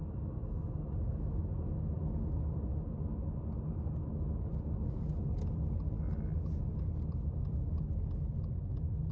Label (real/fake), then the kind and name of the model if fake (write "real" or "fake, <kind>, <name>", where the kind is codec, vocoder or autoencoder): real